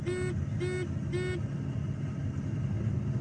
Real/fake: real